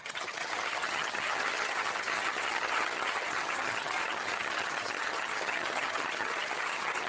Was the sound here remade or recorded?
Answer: remade